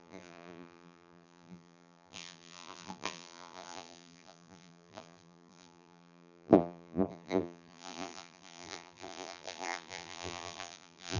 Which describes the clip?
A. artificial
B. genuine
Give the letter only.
A